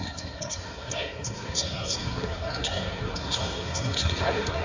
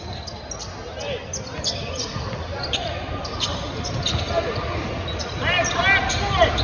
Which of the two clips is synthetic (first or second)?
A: first